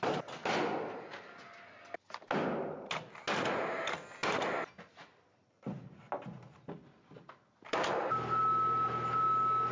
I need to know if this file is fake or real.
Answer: real